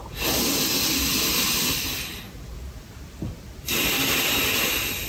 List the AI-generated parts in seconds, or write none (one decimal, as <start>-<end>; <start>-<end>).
1.3-4.4